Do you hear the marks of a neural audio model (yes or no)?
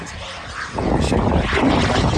no